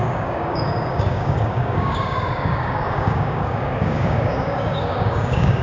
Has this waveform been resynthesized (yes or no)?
yes